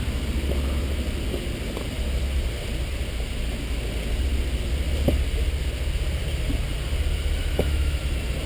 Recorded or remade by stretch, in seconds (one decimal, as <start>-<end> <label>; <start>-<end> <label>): 0.0-7.4 recorded; 7.4-8.0 remade; 8.0-8.5 recorded